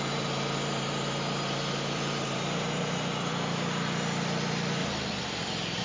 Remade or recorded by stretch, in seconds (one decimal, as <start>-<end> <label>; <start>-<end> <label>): 0.0-4.8 remade; 4.8-5.8 recorded